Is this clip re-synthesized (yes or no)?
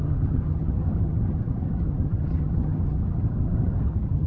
yes